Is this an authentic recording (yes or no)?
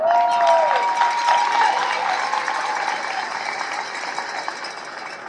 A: yes